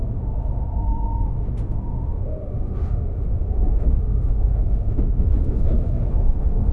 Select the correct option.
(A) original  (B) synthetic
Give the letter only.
B